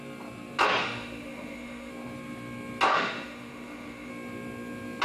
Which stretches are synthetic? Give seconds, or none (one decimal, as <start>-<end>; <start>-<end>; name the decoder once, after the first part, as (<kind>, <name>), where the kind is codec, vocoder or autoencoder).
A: 0.8-1.9 (autoencoder, DAC-VAE); 2.9-4.1